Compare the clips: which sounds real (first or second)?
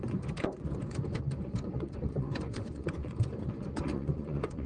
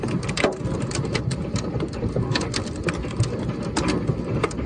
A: second